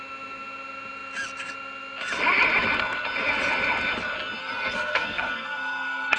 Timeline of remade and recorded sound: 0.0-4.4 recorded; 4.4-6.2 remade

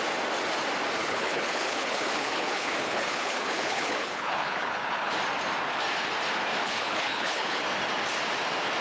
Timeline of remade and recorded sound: 0.0-1.0 recorded; 1.0-5.1 remade; 5.1-6.6 recorded; 6.6-7.6 remade; 7.6-8.8 recorded

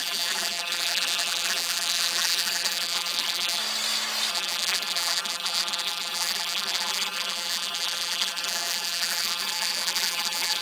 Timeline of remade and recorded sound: 0.0-3.6 remade; 3.6-4.3 recorded; 4.3-10.6 remade

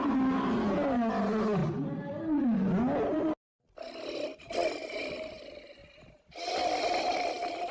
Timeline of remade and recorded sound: 0.0-7.7 recorded

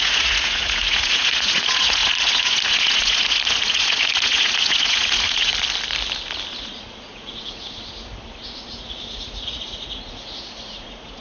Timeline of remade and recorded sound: 0.0-5.5 remade; 5.5-6.6 recorded; 6.6-7.8 remade; 7.8-8.4 recorded; 8.4-11.2 remade

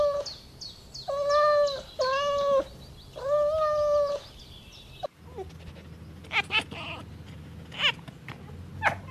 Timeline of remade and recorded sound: 0.0-9.1 recorded